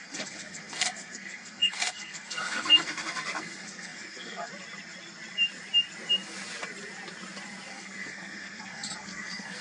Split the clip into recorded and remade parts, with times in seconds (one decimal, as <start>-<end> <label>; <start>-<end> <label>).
0.0-4.5 remade; 4.5-7.7 recorded; 7.7-9.6 remade

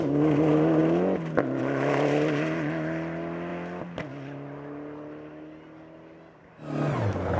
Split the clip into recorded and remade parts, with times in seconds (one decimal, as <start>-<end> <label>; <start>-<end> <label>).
0.0-7.4 recorded

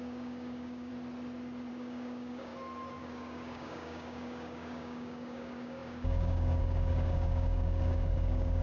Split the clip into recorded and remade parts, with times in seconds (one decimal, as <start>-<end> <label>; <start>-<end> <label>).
0.0-0.9 remade; 0.9-1.7 recorded; 1.7-2.5 remade; 2.5-3.0 recorded; 3.0-8.6 remade

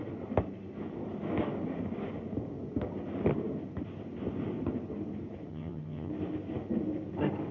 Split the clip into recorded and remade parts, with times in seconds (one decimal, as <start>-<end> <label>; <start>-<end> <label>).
0.0-5.5 recorded; 5.5-6.1 remade; 6.1-7.5 recorded

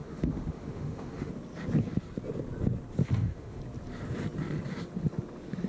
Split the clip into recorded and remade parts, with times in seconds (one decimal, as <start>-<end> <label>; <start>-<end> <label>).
0.0-1.3 remade; 1.3-3.0 recorded; 3.0-3.6 remade; 3.6-5.7 recorded

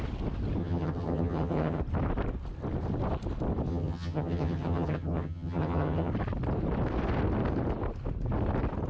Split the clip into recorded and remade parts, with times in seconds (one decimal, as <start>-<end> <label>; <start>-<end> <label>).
0.0-0.6 recorded; 0.6-1.8 remade; 1.8-3.7 recorded; 3.7-6.1 remade; 6.1-8.9 recorded

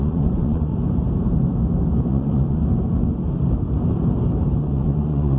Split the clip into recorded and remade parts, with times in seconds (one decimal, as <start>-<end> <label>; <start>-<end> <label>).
0.0-0.7 remade; 0.7-2.1 recorded; 2.1-2.6 remade; 2.6-4.6 recorded; 4.6-5.4 remade